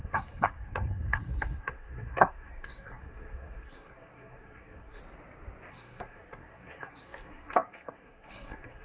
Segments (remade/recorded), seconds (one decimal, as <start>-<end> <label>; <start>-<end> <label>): 0.0-5.0 remade; 5.0-5.7 recorded; 5.7-8.8 remade